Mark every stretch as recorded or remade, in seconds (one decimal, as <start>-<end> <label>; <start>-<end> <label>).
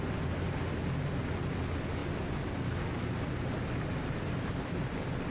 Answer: 0.0-5.3 recorded